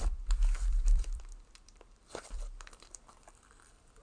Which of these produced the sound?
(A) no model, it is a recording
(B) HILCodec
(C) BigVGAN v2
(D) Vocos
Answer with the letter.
C